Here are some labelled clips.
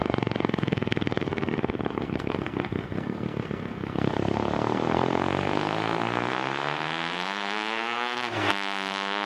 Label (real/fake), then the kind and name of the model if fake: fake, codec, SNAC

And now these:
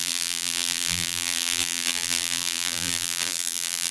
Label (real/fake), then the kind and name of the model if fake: fake, vocoder, BigVGAN v2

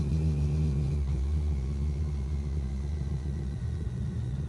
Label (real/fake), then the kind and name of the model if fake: fake, vocoder, Vocos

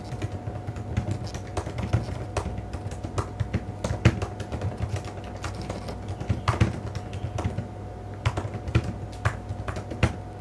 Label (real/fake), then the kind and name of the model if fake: real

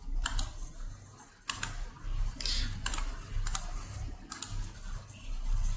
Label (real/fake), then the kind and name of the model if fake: real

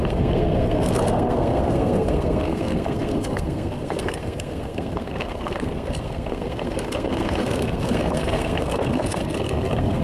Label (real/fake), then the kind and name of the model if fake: fake, codec, SNAC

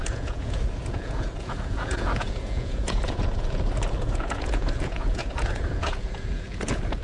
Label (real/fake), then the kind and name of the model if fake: fake, vocoder, Vocos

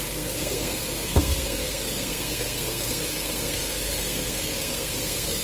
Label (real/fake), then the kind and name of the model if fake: fake, codec, SNAC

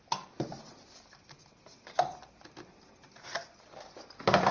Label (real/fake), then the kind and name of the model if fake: real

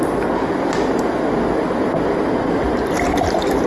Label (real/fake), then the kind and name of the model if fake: real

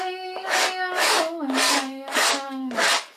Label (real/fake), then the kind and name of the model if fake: fake, codec, DAC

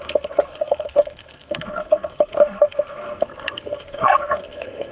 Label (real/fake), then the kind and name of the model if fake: fake, codec, SNAC